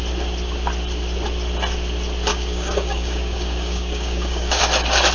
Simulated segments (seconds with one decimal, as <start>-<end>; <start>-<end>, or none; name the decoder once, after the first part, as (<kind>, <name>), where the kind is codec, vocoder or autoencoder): 2.3-4.6 (codec, DAC)